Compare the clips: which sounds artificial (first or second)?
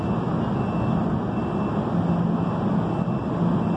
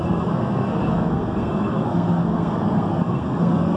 second